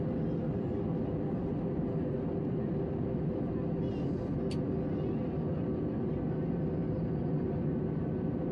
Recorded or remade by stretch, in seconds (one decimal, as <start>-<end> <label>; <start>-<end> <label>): 0.0-8.5 recorded